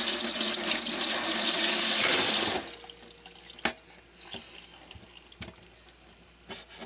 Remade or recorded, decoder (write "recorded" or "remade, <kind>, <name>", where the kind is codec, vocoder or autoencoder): recorded